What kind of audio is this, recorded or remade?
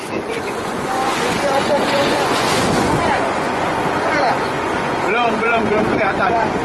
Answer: remade